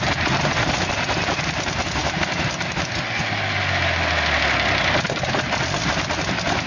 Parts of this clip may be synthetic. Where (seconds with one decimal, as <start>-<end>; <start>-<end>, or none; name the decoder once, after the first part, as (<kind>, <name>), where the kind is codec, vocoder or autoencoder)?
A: none

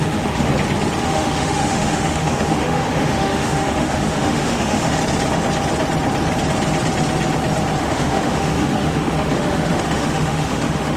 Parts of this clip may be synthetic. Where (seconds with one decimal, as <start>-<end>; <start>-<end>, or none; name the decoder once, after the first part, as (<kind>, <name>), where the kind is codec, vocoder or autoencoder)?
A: 0.0-0.5 (autoencoder, DAC-VAE); 1.0-5.0; 7.8-11.0

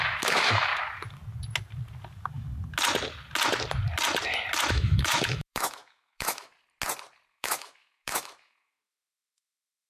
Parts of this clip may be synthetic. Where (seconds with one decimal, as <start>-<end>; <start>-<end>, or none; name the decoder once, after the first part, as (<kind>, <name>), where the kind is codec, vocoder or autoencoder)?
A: 0.0-0.7 (autoencoder, DAC-VAE); 4.7-6.5; 7.3-9.9